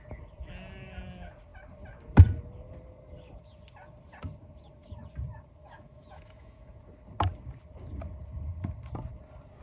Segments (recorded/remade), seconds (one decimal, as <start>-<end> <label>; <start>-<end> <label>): 0.0-5.6 recorded; 5.6-6.8 remade; 6.8-9.6 recorded